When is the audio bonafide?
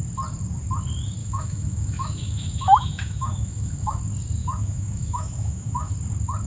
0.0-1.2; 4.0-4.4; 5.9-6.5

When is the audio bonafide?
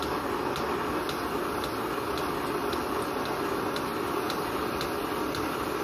0.0-5.8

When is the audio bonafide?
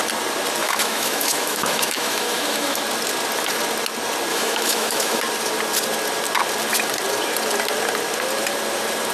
0.0-0.6; 2.8-4.3; 5.2-9.1